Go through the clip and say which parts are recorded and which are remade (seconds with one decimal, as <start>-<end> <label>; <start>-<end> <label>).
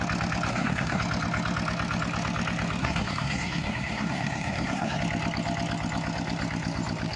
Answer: 0.0-0.5 recorded; 0.5-1.0 remade; 1.0-2.8 recorded; 2.8-5.0 remade; 5.0-7.2 recorded